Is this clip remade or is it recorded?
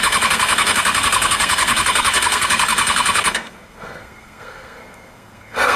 remade